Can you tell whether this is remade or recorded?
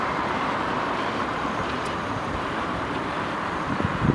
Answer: remade